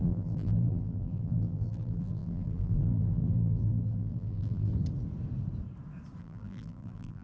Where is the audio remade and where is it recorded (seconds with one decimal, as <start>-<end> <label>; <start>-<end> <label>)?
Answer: 0.0-4.7 remade; 4.7-6.2 recorded; 6.2-7.2 remade